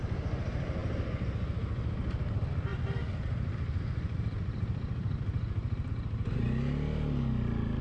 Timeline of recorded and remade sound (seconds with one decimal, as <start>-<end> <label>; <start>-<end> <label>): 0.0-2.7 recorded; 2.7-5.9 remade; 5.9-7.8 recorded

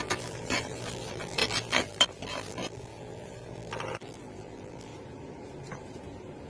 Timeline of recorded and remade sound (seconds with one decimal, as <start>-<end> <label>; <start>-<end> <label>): 0.0-4.9 remade; 4.9-6.5 recorded

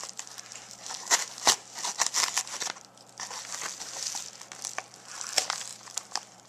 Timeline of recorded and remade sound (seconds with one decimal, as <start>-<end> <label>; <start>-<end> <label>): 0.0-0.5 recorded; 0.5-1.3 remade; 1.3-5.7 recorded; 5.7-6.5 remade